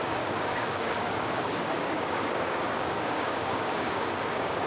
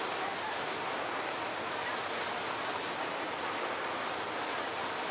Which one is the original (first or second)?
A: second